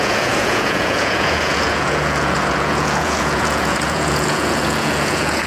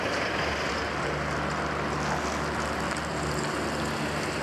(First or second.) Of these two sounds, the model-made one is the first